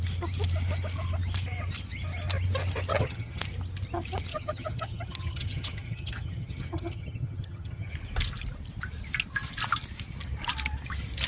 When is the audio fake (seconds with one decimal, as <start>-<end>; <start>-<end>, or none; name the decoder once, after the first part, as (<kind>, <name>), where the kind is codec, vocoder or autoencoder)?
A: 2.9-3.4 (vocoder, HiFi-GAN); 4.3-7.9